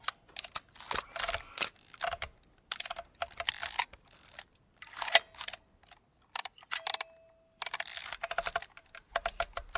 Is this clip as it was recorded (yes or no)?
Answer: yes